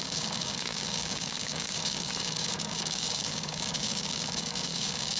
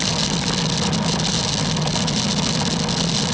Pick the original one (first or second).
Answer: second